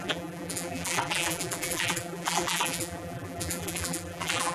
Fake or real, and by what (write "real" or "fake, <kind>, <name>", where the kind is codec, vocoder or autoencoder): fake, vocoder, BigVGAN v2